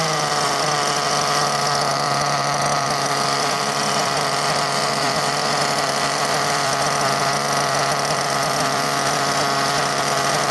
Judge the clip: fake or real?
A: fake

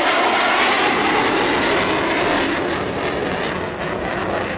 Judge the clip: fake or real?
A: real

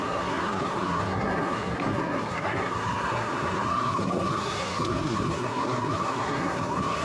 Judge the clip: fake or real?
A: fake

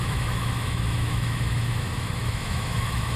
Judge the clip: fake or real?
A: fake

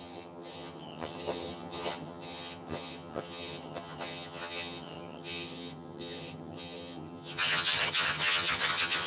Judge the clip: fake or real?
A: fake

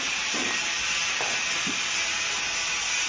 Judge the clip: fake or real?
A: real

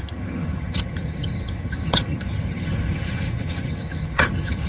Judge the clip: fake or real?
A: fake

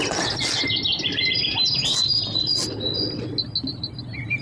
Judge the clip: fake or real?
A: real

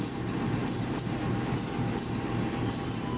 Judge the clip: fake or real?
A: real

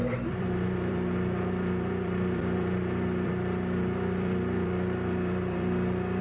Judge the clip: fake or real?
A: fake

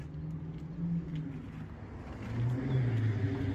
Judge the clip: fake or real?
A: real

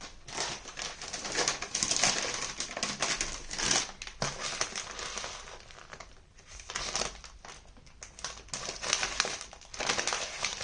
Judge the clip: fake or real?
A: real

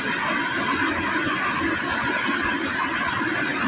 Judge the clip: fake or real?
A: real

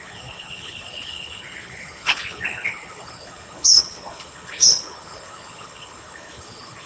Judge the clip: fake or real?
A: fake